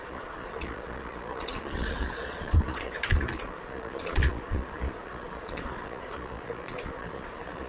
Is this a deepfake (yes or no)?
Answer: yes